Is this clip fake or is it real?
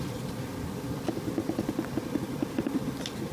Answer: fake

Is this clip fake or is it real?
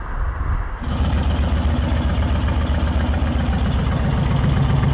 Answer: real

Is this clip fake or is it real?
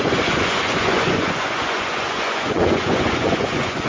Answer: fake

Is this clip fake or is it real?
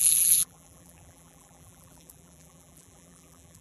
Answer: fake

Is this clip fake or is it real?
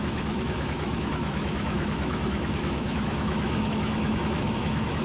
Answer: fake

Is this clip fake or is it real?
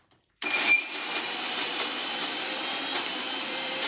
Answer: fake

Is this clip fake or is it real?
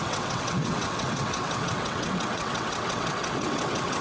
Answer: fake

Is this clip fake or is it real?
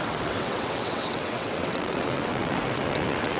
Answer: fake